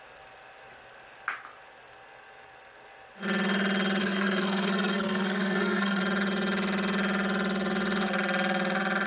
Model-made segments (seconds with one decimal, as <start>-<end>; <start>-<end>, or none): 4.0-6.0